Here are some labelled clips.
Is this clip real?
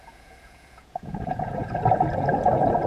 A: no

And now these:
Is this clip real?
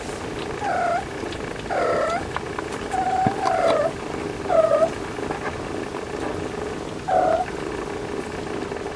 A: yes